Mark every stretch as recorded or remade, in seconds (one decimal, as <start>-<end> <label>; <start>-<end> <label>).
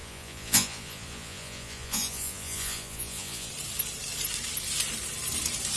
0.0-3.5 remade; 3.5-5.8 recorded